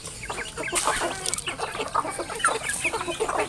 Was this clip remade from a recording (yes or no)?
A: no